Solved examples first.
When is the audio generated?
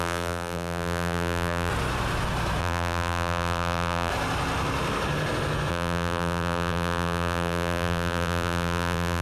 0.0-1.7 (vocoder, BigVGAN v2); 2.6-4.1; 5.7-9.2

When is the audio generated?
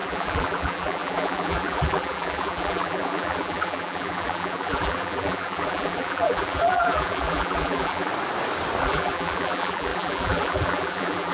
0.0-8.1 (vocoder, BigVGAN v2); 8.8-11.3